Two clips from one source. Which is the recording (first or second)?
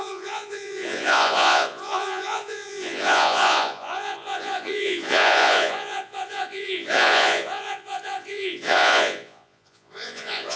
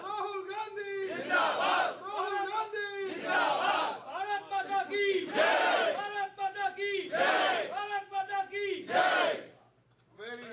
second